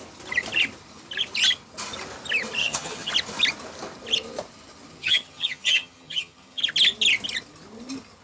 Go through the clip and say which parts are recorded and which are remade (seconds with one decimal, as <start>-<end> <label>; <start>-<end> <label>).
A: 0.0-2.6 recorded; 2.6-3.1 remade; 3.1-5.0 recorded; 5.0-6.6 remade; 6.6-8.2 recorded